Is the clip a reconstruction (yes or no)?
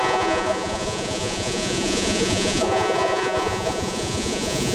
yes